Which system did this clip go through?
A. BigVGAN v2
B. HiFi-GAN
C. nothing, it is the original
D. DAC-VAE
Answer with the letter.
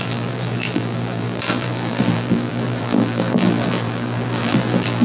A